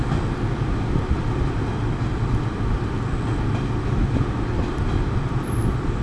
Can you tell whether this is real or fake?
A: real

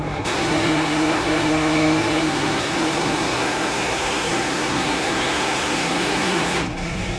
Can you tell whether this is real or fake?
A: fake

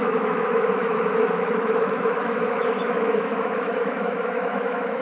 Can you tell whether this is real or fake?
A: fake